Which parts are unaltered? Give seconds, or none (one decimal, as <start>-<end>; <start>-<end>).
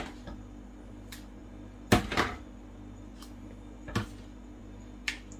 0.0-5.4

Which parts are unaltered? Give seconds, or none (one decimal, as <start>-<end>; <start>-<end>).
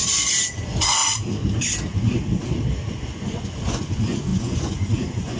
0.0-0.5; 1.0-2.9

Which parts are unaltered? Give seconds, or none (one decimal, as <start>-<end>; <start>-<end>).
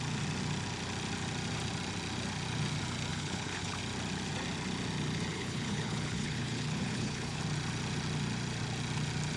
0.0-3.1; 3.8-5.3; 7.4-9.4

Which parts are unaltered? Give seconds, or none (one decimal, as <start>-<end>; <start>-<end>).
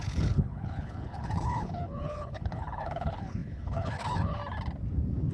4.4-5.3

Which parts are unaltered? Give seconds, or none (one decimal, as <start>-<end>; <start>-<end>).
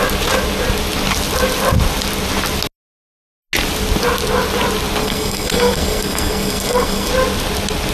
0.0-5.0; 7.1-7.9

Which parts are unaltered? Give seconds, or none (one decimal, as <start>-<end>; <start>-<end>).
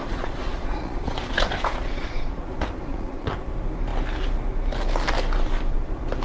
2.5-2.9; 3.4-6.2